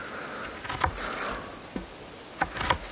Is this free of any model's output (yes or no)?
yes